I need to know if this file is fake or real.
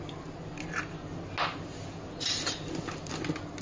real